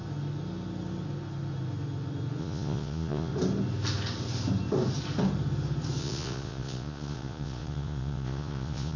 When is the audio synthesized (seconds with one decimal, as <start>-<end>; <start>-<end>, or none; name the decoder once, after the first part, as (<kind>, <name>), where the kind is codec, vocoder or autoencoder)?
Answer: 2.4-3.3 (vocoder, Vocos); 6.0-9.0